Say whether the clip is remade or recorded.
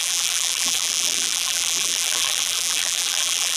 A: remade